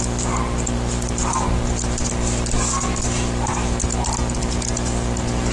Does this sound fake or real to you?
real